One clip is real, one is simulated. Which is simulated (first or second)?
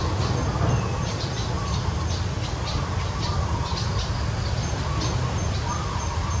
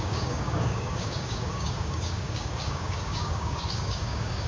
second